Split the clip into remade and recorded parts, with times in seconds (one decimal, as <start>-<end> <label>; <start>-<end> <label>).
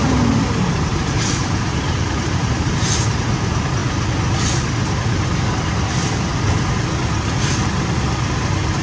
0.0-0.9 recorded; 0.9-3.4 remade; 3.4-8.8 recorded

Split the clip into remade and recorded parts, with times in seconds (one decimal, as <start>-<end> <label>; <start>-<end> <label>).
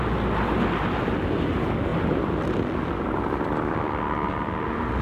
0.0-5.0 recorded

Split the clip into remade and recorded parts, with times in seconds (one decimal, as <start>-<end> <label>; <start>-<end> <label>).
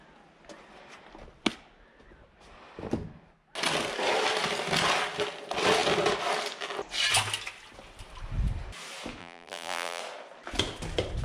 0.0-9.2 recorded; 9.2-10.0 remade; 10.0-11.2 recorded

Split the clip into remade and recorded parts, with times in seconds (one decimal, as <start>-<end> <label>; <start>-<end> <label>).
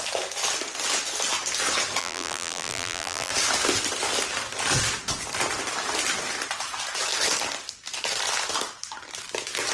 0.0-2.0 recorded; 2.0-3.3 remade; 3.3-9.7 recorded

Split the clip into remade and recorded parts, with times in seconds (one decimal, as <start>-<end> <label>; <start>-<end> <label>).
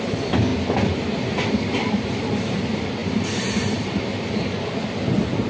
0.0-3.0 recorded; 3.0-3.9 remade; 3.9-5.5 recorded